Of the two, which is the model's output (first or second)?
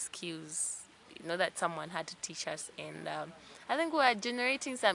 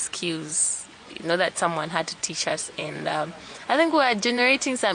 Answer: second